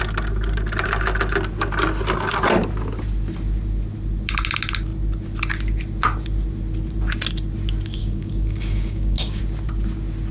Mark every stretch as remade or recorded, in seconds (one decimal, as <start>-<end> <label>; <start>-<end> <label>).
0.0-8.0 recorded; 8.0-9.4 remade; 9.4-10.3 recorded

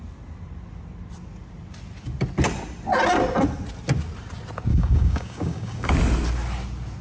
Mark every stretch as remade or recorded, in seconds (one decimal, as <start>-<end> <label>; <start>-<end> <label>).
0.0-4.7 recorded; 4.7-5.9 remade; 5.9-7.0 recorded

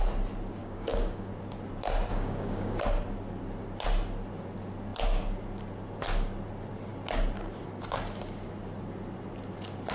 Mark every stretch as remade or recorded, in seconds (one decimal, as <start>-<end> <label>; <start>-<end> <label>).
0.0-0.6 recorded; 0.6-1.3 remade; 1.3-2.1 recorded; 2.1-2.8 remade; 2.8-9.9 recorded